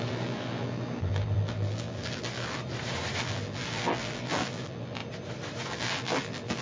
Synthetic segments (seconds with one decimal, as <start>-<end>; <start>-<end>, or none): 0.0-2.6; 3.2-5.0; 5.7-6.6